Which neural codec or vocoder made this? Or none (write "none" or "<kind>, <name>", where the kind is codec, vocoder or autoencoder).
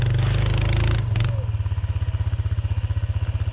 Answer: none